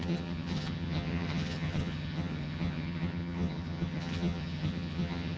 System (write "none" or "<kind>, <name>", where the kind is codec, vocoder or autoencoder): vocoder, HiFi-GAN